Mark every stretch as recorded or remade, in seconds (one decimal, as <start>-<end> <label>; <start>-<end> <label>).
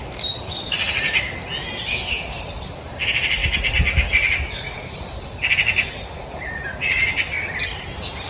0.0-1.9 recorded; 1.9-2.4 remade; 2.4-8.3 recorded